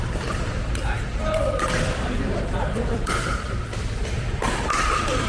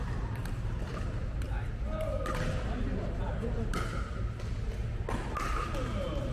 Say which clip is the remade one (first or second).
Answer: first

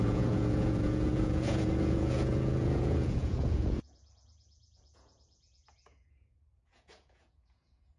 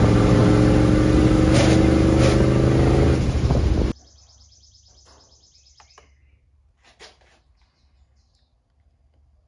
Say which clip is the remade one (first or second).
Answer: first